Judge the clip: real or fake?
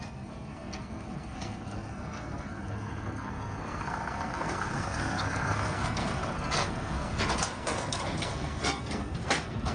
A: fake